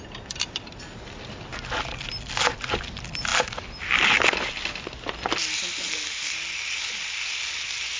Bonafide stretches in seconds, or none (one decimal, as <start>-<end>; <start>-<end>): 0.0-8.0